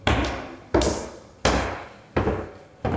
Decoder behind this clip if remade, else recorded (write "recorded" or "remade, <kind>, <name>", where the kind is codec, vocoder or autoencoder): recorded